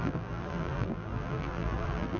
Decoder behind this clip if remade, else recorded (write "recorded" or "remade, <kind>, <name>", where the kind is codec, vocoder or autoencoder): remade, vocoder, BigVGAN v2